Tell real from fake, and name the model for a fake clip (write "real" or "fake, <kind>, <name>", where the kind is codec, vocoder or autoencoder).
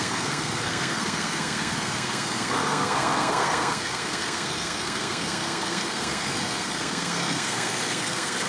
fake, codec, SNAC